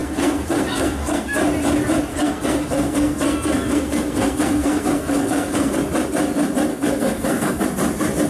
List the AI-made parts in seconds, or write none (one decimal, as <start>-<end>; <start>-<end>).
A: 0.0-1.4; 2.1-5.8; 6.7-7.6